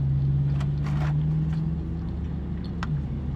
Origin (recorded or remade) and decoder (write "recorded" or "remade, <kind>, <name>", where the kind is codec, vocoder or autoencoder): recorded